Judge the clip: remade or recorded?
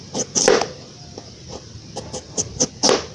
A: recorded